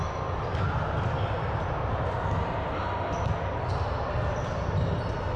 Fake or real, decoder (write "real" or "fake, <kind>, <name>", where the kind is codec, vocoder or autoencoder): real